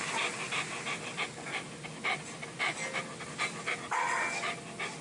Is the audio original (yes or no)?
yes